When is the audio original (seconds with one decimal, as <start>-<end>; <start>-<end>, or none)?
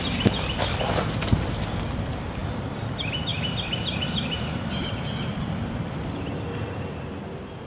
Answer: 0.0-2.4; 2.9-3.3; 6.2-7.7